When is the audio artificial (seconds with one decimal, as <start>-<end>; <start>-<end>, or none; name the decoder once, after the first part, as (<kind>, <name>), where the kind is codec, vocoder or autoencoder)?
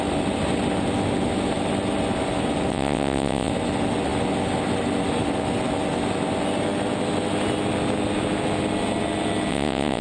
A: 2.7-3.5 (vocoder, WaveNeXt); 9.5-10.0